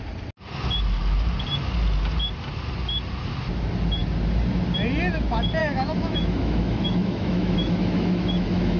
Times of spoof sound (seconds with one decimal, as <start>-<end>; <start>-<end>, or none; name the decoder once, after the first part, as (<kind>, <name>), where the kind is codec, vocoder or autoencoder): 5.6-8.8 (autoencoder, DAC-VAE)